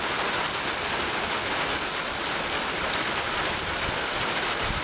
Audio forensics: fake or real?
real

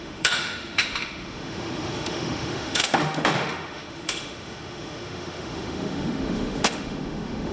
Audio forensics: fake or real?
fake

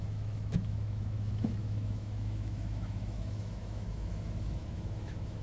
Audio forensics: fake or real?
fake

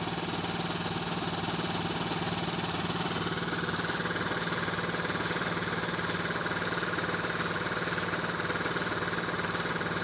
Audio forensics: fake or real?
real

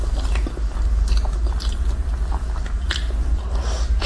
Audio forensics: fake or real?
real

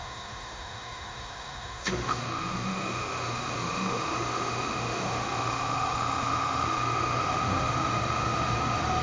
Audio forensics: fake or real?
fake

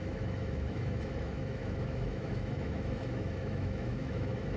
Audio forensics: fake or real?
fake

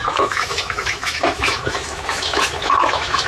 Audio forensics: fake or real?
fake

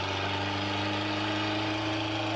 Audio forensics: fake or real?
real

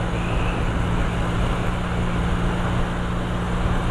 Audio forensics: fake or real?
real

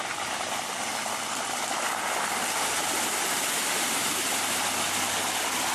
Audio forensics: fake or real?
real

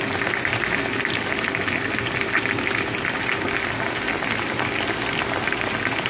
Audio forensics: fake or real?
real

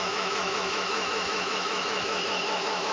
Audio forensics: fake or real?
fake